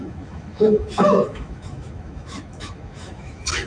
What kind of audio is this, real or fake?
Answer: fake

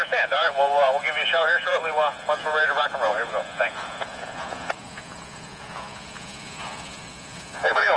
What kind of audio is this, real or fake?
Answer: fake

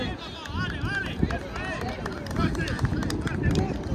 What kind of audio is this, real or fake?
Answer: real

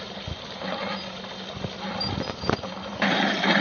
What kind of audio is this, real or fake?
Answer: real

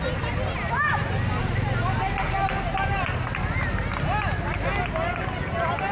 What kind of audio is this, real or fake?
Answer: real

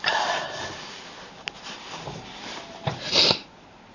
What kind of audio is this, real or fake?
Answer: real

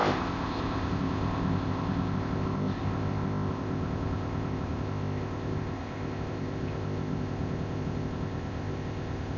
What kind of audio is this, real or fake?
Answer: fake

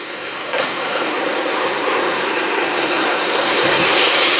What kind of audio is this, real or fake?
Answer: fake